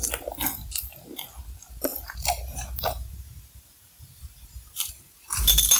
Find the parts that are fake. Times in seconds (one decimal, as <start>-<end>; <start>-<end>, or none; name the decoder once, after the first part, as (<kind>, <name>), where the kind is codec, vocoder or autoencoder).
1.9-5.8 (vocoder, BigVGAN v2)